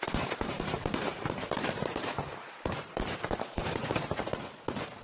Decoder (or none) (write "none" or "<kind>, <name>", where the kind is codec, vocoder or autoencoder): vocoder, BigVGAN v2